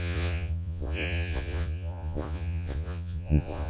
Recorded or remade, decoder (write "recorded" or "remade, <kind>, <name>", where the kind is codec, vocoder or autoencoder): remade, vocoder, Vocos